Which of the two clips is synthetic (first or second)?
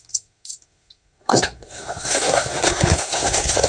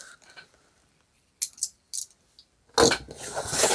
first